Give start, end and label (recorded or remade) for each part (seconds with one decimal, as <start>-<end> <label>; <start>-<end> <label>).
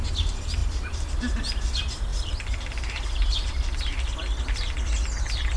0.0-2.1 recorded; 2.1-3.5 remade; 3.5-5.6 recorded